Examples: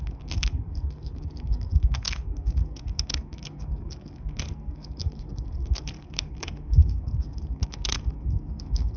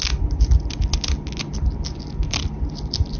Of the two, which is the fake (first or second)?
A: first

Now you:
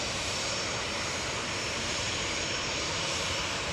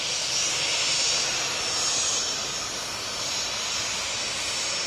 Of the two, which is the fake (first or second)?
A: first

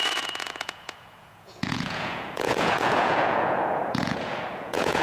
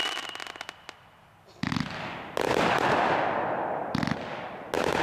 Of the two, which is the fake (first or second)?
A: first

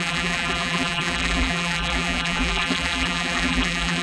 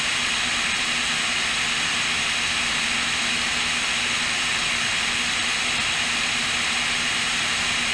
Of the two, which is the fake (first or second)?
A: first